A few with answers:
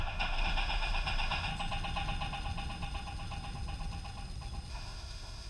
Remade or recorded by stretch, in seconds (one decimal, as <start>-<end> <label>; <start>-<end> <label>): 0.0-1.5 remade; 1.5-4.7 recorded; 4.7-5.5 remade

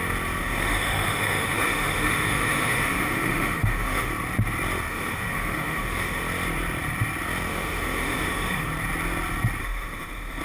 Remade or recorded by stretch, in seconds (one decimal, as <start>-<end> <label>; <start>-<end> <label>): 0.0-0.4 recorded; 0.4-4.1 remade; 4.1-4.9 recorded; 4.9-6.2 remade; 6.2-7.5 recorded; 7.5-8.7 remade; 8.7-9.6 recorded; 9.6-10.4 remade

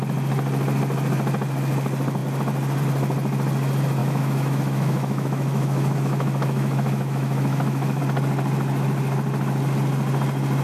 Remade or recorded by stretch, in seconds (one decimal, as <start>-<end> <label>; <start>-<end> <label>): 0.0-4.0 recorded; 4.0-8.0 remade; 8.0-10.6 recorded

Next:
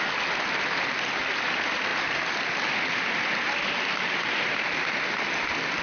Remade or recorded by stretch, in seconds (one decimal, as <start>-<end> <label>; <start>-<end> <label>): 0.0-5.8 recorded

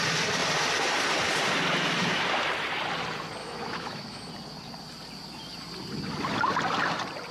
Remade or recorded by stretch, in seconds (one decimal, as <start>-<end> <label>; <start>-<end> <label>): 0.0-3.4 recorded; 3.4-4.3 remade; 4.3-7.3 recorded

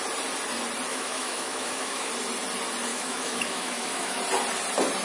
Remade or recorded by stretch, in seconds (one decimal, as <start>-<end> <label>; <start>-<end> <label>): 0.0-0.9 recorded; 0.9-2.1 remade; 2.1-2.9 recorded; 2.9-4.2 remade; 4.2-5.0 recorded

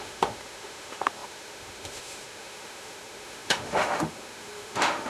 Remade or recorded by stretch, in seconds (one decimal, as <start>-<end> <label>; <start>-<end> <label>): 0.0-5.1 remade

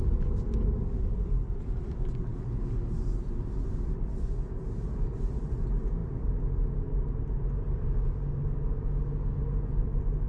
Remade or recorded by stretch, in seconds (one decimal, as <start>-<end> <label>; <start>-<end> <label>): 0.0-10.3 recorded